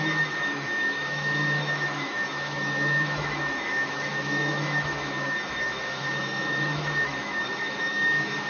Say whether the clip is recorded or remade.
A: remade